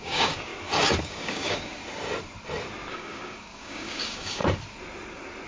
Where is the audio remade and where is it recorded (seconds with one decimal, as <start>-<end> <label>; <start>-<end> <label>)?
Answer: 0.0-0.5 remade; 0.5-1.0 recorded; 1.0-1.8 remade; 1.8-2.9 recorded; 2.9-4.4 remade; 4.4-5.5 recorded

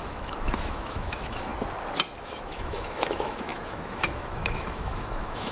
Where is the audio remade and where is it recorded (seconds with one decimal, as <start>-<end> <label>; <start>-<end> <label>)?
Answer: 0.0-1.5 remade; 1.5-2.2 recorded; 2.2-5.5 remade